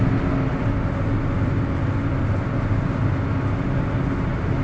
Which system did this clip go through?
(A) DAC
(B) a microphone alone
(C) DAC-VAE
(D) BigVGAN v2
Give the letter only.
B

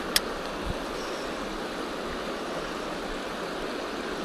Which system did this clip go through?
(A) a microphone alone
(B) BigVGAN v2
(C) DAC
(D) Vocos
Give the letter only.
A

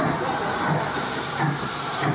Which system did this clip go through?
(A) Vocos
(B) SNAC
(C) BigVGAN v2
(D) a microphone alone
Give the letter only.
D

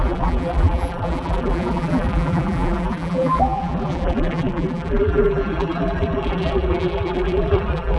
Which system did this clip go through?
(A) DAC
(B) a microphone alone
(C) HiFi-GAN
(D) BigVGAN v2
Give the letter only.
D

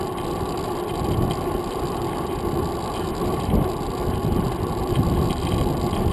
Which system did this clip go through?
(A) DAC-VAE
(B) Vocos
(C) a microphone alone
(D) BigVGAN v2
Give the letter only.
C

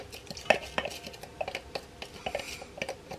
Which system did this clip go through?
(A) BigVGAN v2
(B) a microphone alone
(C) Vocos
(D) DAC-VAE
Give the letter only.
B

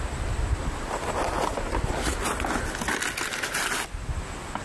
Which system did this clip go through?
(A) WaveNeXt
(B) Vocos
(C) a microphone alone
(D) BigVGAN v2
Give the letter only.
C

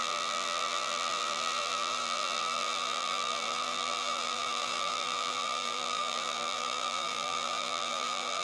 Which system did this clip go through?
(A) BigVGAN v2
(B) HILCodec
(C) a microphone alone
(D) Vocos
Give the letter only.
A